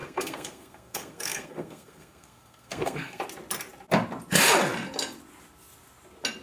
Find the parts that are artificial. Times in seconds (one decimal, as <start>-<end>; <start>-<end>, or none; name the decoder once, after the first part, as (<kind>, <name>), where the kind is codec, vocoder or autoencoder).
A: 0.0-3.2 (codec, SNAC)